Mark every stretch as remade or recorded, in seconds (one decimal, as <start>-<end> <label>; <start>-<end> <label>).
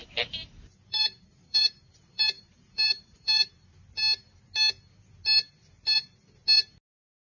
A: 0.0-3.8 remade; 3.8-7.3 recorded